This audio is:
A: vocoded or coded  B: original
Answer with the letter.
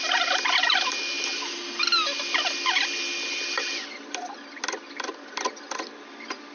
B